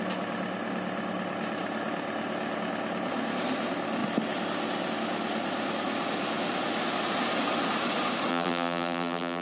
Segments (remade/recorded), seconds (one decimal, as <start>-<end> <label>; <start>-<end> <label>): 0.0-8.3 recorded; 8.3-9.4 remade